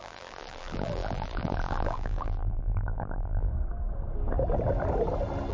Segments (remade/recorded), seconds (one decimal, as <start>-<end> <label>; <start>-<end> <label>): 0.0-3.5 remade; 3.5-5.5 recorded